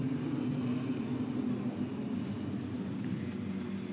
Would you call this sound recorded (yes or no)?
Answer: yes